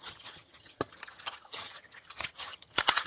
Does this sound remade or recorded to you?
remade